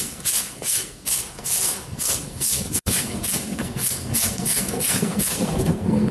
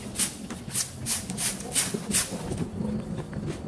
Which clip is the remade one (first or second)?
first